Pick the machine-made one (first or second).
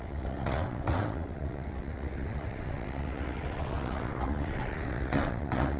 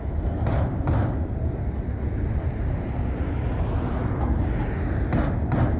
first